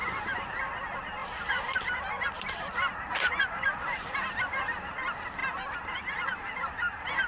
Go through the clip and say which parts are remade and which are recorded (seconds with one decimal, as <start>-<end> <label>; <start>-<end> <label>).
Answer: 0.0-1.2 recorded; 1.2-4.8 remade; 4.8-5.4 recorded; 5.4-7.3 remade